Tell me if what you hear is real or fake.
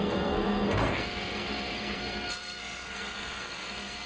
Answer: fake